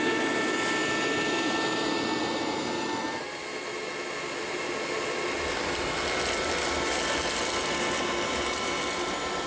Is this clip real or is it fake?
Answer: real